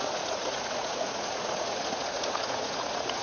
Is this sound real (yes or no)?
no